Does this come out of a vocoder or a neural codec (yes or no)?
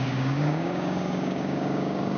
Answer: yes